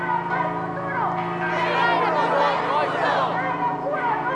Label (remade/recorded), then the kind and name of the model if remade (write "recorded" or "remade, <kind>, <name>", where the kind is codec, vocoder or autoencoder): recorded